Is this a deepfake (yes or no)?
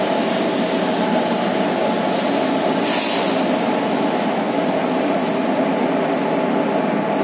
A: no